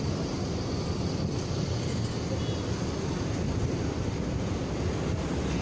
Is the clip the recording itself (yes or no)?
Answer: yes